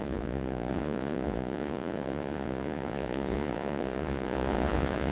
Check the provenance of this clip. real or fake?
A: fake